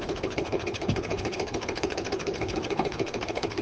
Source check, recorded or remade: remade